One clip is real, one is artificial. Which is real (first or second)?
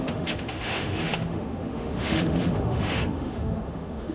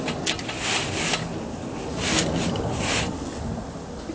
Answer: second